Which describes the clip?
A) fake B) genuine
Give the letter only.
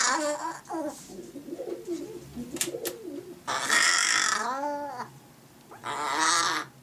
B